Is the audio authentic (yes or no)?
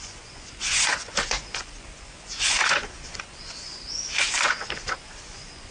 no